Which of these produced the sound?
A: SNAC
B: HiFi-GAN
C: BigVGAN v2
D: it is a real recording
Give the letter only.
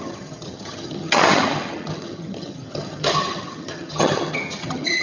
B